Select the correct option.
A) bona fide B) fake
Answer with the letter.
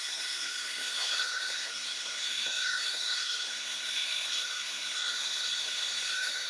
B